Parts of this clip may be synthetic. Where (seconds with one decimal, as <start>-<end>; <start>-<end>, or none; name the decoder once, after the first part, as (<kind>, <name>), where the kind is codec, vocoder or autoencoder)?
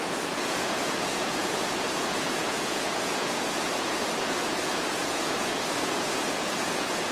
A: 0.0-7.1 (vocoder, Vocos)